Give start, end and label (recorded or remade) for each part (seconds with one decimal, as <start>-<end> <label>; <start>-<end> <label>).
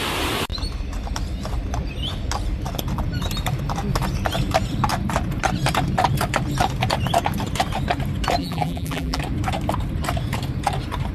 0.0-8.4 recorded; 8.4-9.2 remade; 9.2-11.1 recorded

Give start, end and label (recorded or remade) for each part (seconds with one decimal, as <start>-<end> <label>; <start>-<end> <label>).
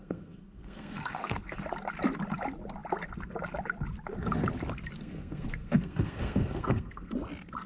0.0-1.6 remade; 1.6-5.0 recorded; 5.0-7.1 remade; 7.1-7.7 recorded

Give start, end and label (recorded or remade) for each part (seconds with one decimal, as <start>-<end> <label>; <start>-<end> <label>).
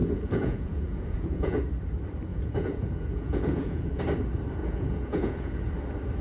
0.0-1.6 remade; 1.6-2.3 recorded; 2.3-4.0 remade; 4.0-4.6 recorded; 4.6-5.7 remade; 5.7-6.2 recorded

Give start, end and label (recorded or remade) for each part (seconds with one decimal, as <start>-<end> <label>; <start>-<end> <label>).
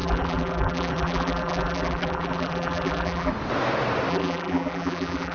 0.0-3.3 remade; 3.3-4.1 recorded; 4.1-5.3 remade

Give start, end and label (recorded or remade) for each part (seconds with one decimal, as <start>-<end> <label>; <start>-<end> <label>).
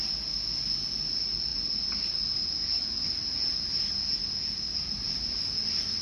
0.0-6.0 recorded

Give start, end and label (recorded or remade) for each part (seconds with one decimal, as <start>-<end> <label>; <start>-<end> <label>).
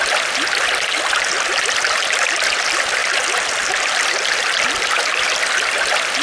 0.0-6.2 recorded